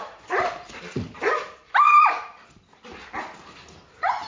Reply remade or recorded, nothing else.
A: remade